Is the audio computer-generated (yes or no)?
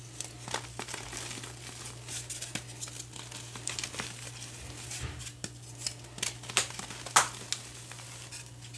no